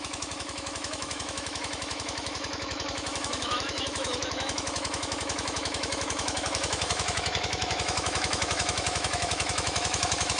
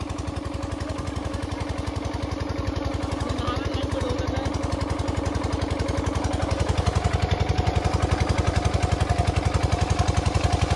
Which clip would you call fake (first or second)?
first